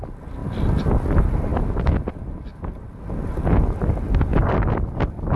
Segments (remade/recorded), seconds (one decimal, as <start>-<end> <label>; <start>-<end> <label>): 0.0-5.4 recorded